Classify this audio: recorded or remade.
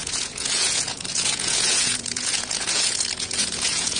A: remade